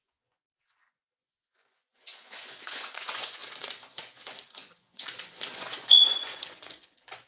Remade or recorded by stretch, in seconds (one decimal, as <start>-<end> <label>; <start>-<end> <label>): 0.0-7.3 remade